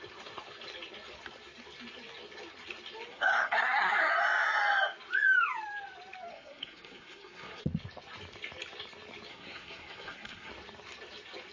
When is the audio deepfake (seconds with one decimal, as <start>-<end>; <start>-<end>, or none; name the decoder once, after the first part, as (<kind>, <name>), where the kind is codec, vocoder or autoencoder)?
3.1-4.1 (codec, SNAC); 6.3-7.6; 9.3-10.5